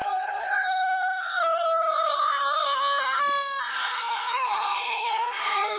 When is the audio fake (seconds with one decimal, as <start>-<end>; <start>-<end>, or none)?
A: 0.0-3.2; 3.6-5.8